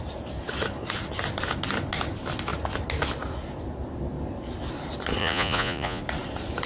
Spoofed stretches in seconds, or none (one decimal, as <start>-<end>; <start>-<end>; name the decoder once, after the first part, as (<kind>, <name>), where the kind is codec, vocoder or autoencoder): 5.2-6.0 (vocoder, Vocos)